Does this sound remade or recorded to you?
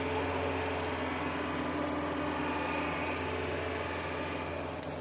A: recorded